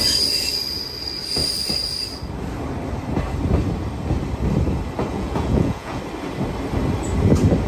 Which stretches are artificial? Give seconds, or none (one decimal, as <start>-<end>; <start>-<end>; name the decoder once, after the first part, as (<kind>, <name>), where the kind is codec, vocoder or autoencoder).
5.1-6.0 (vocoder, Vocos)